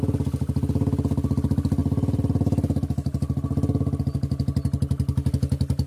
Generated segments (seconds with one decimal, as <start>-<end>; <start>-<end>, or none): none